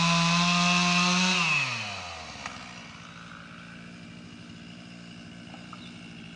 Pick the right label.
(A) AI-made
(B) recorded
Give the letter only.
B